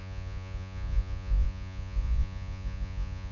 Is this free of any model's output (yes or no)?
no